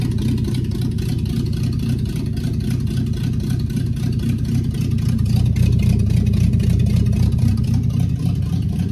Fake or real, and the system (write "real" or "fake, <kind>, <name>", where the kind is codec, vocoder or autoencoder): real